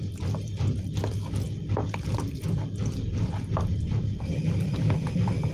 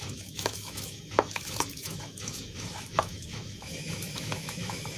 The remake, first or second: second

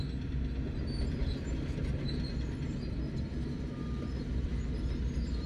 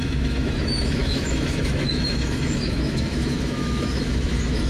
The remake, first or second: second